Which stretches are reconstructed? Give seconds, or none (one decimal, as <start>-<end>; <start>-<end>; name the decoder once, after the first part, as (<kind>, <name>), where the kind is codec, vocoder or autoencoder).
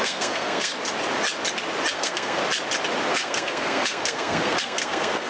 0.0-0.7 (codec, SNAC); 1.9-2.4; 3.1-5.3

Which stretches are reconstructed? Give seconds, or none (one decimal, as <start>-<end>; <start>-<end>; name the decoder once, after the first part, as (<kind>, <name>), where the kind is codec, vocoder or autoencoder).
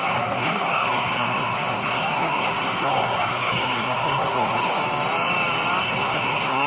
0.0-4.8 (codec, SNAC); 5.8-6.7